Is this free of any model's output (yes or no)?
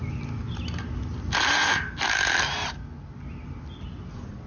yes